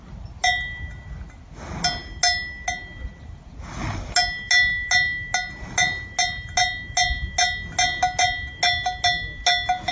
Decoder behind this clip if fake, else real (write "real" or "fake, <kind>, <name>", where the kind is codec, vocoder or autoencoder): real